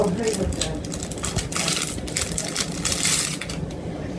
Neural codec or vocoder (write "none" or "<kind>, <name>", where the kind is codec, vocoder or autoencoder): none